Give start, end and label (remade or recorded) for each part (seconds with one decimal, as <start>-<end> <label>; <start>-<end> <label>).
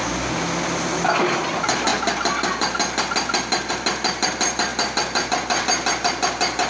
0.0-6.7 recorded